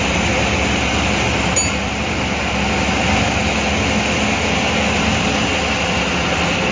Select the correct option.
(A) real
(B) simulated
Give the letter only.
A